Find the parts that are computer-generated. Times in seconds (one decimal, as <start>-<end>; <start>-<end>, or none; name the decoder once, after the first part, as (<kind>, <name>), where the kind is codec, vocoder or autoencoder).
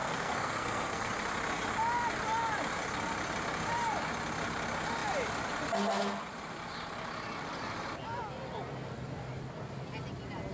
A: 0.0-1.1 (codec, SNAC)